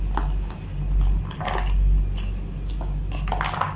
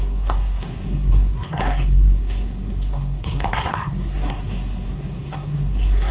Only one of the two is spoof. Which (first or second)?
second